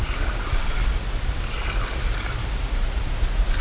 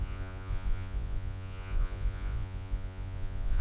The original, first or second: first